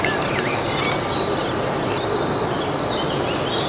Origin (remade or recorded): recorded